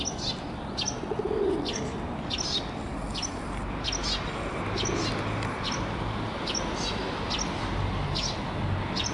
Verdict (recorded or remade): recorded